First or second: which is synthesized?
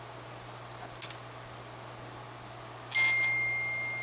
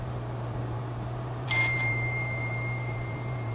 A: second